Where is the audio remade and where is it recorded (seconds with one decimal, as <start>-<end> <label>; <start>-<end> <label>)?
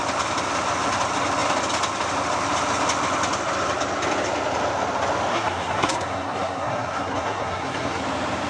0.0-5.3 recorded; 5.3-8.0 remade; 8.0-8.5 recorded